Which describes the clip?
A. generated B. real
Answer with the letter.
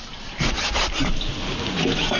B